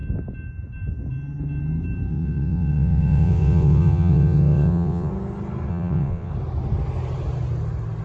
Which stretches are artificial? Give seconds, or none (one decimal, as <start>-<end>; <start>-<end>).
2.1-5.1; 5.7-6.3